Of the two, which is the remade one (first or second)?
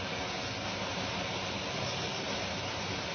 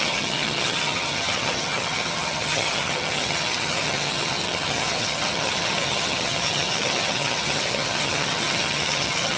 second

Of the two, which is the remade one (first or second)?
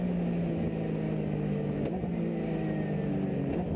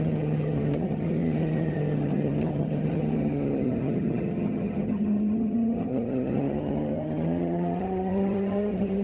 second